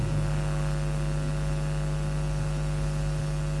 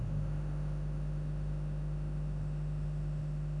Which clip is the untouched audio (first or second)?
first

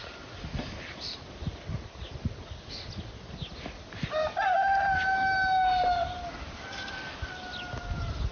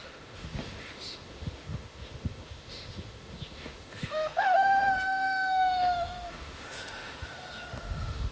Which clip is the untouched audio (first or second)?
first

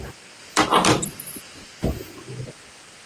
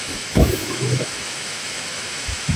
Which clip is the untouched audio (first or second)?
first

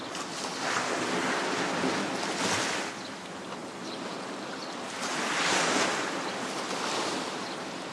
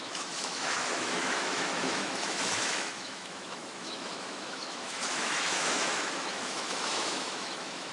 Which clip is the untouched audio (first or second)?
first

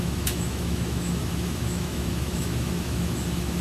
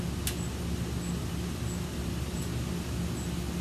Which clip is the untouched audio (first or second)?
second